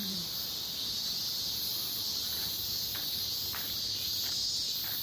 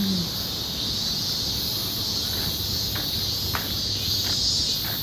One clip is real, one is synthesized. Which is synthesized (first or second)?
first